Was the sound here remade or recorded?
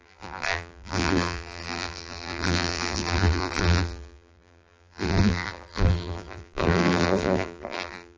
remade